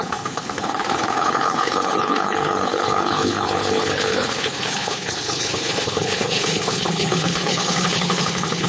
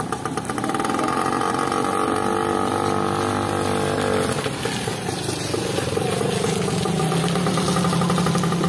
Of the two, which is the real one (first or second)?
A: second